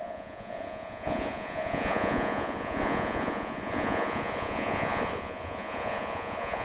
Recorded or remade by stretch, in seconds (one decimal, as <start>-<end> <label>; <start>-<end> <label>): 0.0-6.6 remade